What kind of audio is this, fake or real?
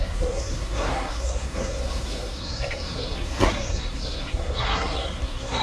fake